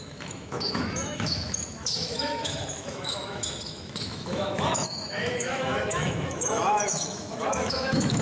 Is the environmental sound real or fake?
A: fake